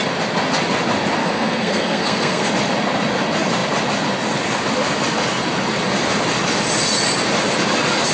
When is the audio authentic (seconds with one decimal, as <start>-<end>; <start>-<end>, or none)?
0.0-1.2; 2.5-8.1